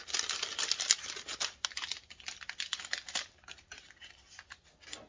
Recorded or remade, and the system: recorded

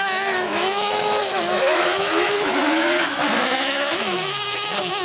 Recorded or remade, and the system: remade, autoencoder, DAC-VAE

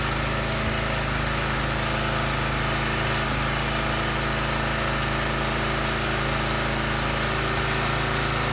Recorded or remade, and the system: recorded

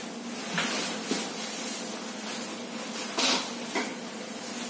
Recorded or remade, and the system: recorded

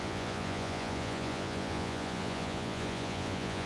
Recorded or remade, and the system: remade, vocoder, Vocos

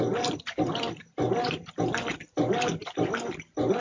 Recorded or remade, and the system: recorded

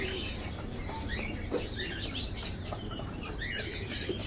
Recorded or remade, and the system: remade, vocoder, BigVGAN v2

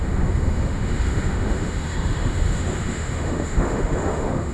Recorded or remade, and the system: remade, autoencoder, DAC-VAE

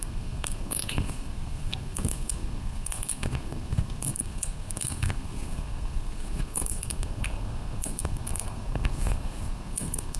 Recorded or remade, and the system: remade, codec, SNAC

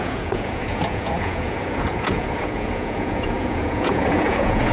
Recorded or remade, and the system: remade, vocoder, Vocos